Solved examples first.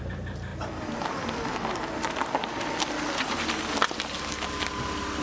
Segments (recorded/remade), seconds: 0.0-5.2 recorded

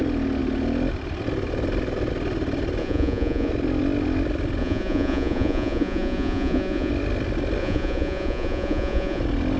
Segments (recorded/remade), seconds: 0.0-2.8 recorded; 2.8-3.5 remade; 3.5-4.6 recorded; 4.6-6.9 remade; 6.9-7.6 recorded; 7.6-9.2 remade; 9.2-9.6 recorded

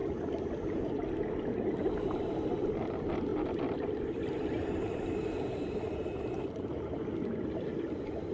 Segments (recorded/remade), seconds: 0.0-8.3 recorded